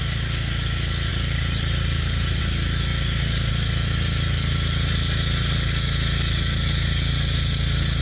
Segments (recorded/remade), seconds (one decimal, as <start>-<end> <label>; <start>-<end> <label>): 0.0-1.1 recorded; 1.1-2.4 remade; 2.4-2.9 recorded; 2.9-3.5 remade; 3.5-8.0 recorded